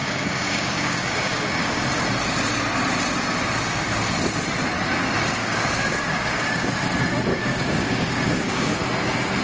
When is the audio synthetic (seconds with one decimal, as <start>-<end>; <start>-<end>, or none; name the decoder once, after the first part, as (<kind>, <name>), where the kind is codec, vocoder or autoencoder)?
0.0-1.9 (codec, DAC); 5.4-6.7; 7.3-8.8